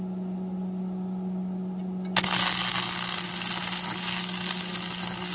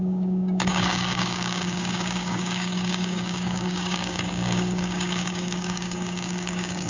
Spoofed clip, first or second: second